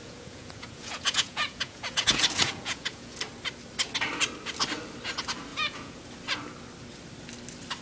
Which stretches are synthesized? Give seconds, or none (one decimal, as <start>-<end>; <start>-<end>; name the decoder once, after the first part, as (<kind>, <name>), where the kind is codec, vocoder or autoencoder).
0.0-3.1 (vocoder, Vocos); 5.5-6.0